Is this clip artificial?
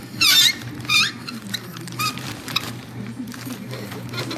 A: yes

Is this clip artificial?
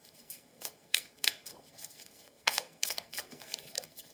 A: yes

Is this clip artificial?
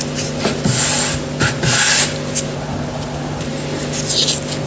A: no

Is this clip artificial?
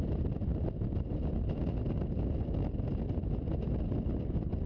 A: no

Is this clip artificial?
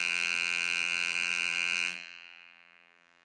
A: yes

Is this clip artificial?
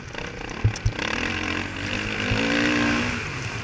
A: no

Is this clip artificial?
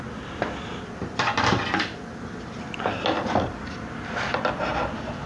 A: no